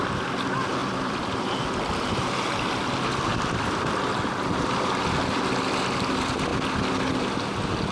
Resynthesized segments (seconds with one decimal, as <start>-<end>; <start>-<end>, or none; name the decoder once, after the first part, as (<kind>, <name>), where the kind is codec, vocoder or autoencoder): 0.8-2.3 (vocoder, BigVGAN v2); 3.3-3.8